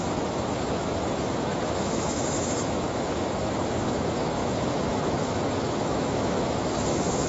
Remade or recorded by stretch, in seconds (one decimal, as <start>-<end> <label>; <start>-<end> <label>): 0.0-7.3 remade